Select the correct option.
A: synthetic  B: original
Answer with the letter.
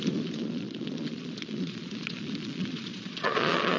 A